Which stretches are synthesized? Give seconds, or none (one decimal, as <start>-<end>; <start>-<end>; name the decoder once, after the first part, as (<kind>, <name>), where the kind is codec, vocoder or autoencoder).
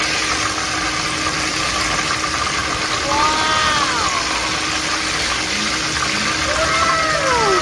none